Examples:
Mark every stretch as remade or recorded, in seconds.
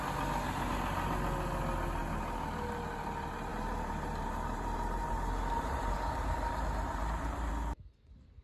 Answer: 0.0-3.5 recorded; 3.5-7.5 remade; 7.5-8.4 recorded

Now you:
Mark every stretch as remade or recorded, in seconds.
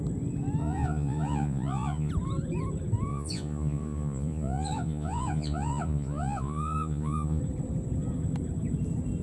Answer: 0.0-0.6 recorded; 0.6-2.1 remade; 2.1-3.1 recorded; 3.1-7.4 remade; 7.4-9.2 recorded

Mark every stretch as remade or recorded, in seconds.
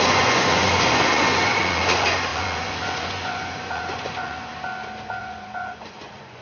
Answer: 0.0-4.5 remade; 4.5-5.2 recorded; 5.2-6.4 remade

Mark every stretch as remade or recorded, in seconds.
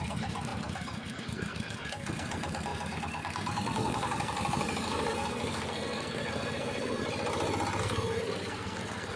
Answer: 0.0-7.0 remade; 7.0-7.8 recorded; 7.8-9.2 remade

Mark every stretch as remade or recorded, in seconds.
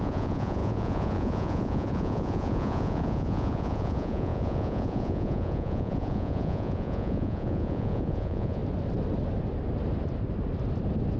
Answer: 0.0-8.6 remade; 8.6-11.2 recorded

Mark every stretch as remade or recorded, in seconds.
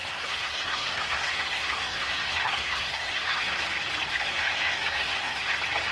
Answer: 0.0-3.5 remade; 3.5-4.1 recorded; 4.1-5.5 remade; 5.5-5.9 recorded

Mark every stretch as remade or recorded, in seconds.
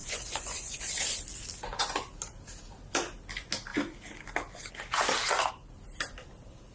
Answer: 0.0-0.8 remade; 0.8-6.7 recorded